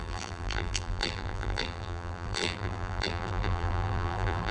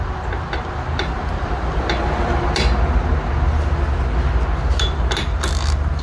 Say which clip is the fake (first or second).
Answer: first